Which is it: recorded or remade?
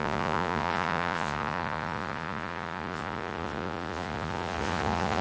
remade